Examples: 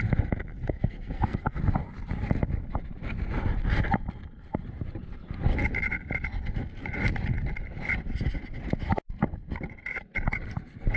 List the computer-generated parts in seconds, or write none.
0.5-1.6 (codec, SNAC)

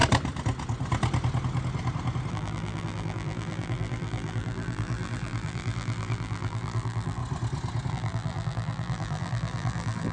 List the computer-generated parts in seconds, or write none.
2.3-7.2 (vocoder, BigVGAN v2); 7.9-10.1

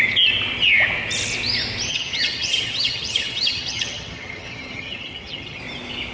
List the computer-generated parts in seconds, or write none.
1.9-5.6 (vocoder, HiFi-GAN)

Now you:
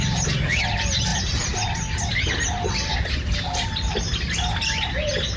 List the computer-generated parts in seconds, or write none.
none

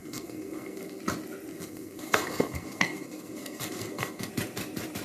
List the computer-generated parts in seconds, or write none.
0.0-1.0 (codec, SNAC); 1.5-4.3

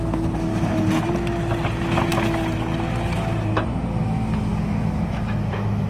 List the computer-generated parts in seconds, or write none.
0.0-0.5 (autoencoder, DAC-VAE); 4.0-5.9